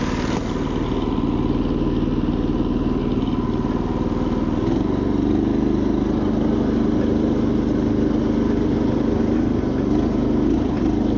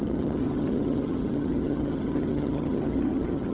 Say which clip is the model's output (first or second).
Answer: second